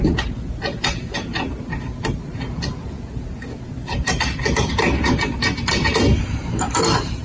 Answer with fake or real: real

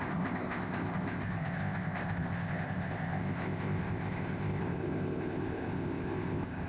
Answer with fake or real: fake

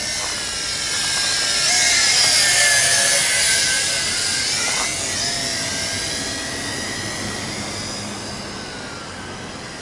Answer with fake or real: real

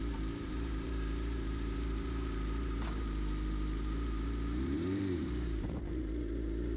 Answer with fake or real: fake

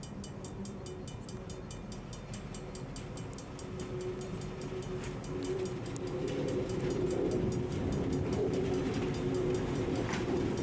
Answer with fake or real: real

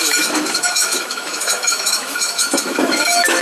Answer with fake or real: fake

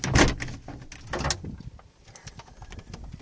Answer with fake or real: real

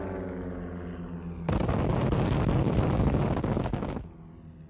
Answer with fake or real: real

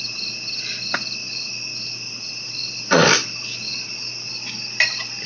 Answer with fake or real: real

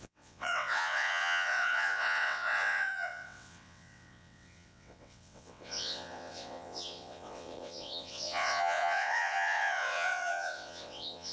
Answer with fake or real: fake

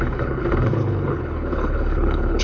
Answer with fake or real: fake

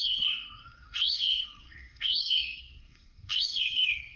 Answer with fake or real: fake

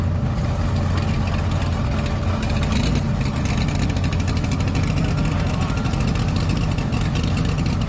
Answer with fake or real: real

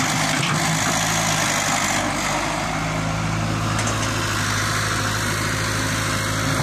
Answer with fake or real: real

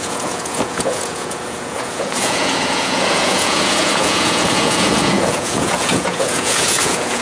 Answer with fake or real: fake